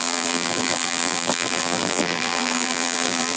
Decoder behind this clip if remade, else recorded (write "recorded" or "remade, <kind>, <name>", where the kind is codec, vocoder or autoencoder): remade, vocoder, BigVGAN v2